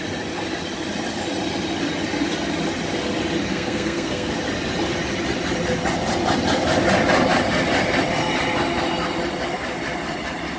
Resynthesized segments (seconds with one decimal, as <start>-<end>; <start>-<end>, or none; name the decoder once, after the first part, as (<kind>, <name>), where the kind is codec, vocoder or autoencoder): 3.5-4.3 (codec, SNAC)